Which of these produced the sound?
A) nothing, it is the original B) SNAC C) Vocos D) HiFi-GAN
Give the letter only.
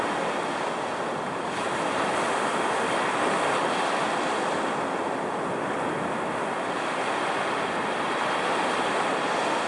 A